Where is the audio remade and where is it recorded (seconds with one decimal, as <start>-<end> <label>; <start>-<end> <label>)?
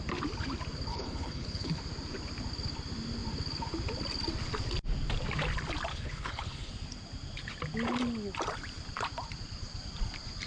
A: 0.0-0.9 recorded; 0.9-1.8 remade; 1.8-5.9 recorded; 5.9-6.7 remade; 6.7-10.5 recorded